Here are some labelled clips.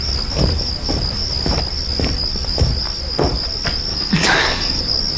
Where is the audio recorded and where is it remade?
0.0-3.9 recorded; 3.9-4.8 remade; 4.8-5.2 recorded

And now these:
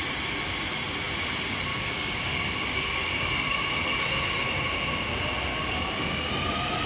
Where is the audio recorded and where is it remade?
0.0-1.7 recorded; 1.7-3.7 remade; 3.7-5.5 recorded; 5.5-6.3 remade; 6.3-6.9 recorded